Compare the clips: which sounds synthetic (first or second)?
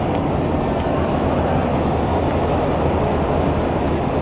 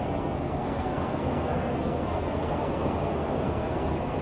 second